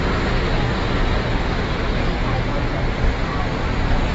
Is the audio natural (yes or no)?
yes